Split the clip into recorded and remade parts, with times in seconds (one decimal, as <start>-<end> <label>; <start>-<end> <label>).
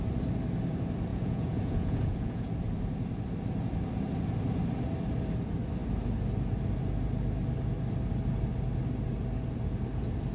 0.0-1.1 recorded; 1.1-2.5 remade; 2.5-10.3 recorded